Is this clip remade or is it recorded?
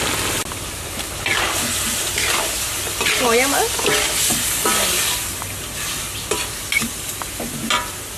recorded